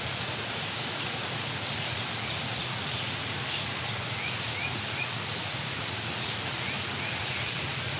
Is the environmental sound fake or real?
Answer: fake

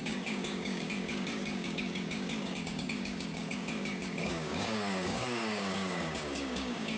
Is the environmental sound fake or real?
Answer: fake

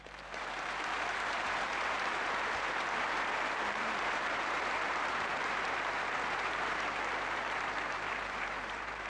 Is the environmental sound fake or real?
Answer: fake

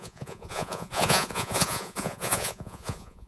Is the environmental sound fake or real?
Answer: fake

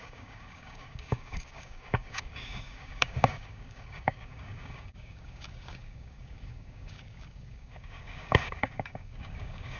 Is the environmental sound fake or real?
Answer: fake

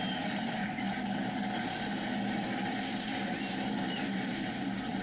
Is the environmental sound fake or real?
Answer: fake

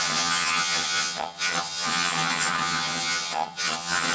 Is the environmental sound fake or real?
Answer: fake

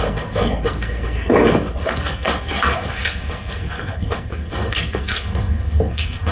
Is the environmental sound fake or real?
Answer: fake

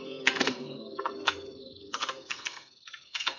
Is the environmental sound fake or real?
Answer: fake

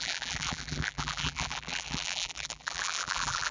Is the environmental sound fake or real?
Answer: fake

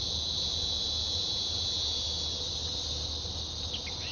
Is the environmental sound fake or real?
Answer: real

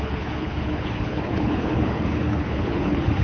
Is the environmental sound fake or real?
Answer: fake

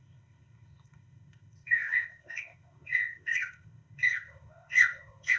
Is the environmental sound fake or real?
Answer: fake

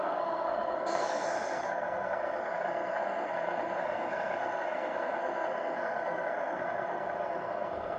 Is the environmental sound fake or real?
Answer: fake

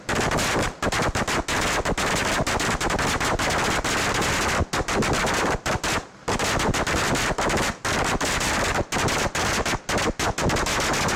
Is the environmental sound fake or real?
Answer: real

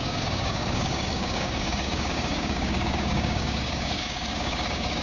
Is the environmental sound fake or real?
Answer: fake